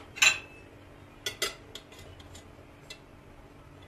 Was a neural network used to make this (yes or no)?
no